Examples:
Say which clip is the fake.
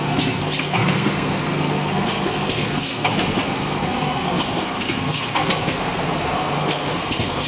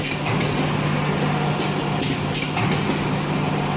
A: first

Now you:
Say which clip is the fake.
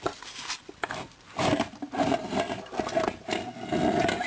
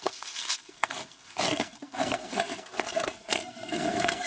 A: second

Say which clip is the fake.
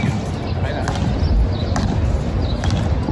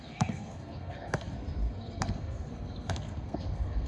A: second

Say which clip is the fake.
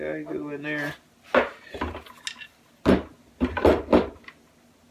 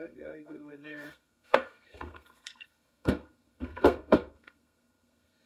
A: second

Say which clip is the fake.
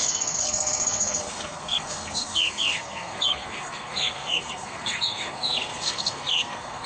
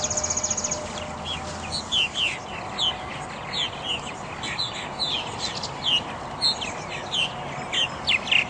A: first